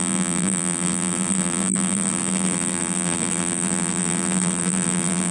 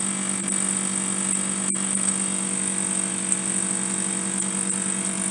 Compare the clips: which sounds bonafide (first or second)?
second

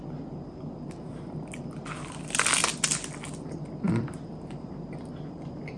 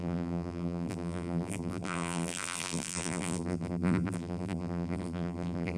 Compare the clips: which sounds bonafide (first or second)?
first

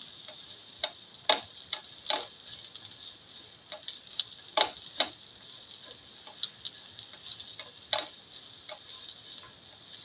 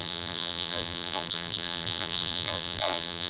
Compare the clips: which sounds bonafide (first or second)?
first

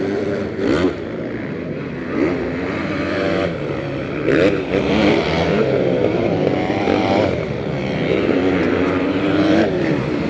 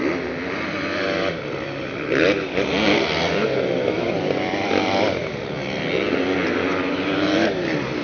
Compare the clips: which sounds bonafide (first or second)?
second